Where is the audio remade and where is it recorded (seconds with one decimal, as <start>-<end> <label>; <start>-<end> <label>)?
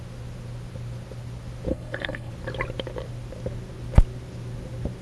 0.0-1.7 recorded; 1.7-2.3 remade; 2.3-5.0 recorded